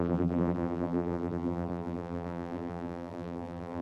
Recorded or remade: remade